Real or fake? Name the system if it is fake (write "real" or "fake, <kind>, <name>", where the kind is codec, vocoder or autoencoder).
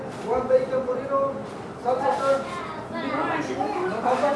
real